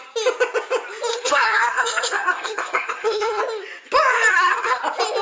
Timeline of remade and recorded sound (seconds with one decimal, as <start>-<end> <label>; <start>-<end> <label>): 0.0-1.1 recorded; 1.1-3.4 remade; 3.4-4.3 recorded; 4.3-4.8 remade; 4.8-5.2 recorded